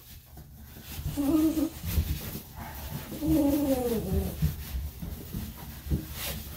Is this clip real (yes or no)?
yes